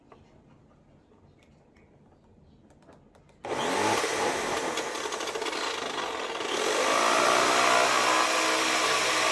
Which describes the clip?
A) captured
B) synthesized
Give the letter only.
A